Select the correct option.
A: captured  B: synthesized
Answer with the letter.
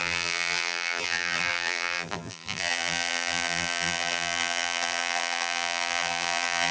B